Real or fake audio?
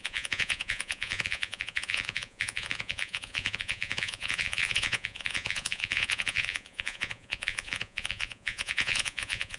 fake